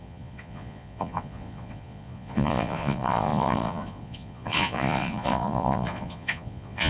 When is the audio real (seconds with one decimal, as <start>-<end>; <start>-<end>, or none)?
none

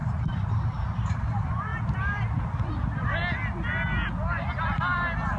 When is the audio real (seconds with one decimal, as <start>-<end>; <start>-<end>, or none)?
1.7-2.7; 3.2-5.4

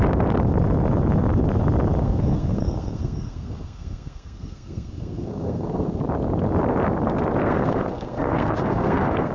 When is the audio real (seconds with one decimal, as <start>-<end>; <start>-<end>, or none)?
0.0-2.0; 6.0-7.4

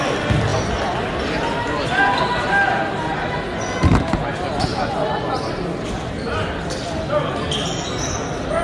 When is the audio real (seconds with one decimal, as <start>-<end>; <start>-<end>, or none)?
0.0-8.6

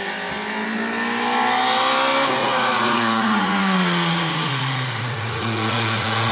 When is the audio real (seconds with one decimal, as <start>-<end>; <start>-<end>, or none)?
0.0-2.4

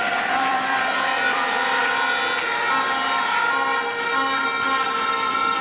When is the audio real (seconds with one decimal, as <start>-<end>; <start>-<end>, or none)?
1.8-5.1

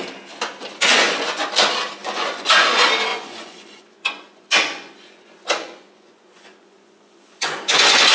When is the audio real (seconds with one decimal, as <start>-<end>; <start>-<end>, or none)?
0.0-0.9; 1.5-2.0; 2.5-3.1